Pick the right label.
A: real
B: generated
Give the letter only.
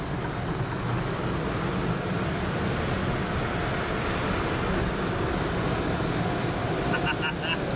A